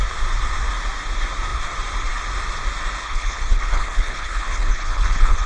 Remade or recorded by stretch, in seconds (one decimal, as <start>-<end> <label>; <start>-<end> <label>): 0.0-3.0 recorded; 3.0-5.5 remade